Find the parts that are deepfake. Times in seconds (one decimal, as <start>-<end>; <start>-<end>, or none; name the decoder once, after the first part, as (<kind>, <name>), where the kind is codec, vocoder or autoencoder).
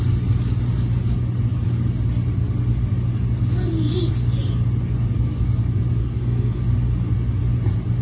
6.0-6.6 (codec, SNAC)